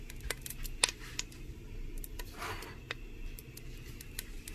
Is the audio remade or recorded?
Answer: recorded